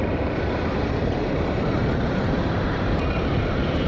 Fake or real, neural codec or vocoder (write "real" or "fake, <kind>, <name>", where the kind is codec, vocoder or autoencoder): fake, vocoder, BigVGAN v2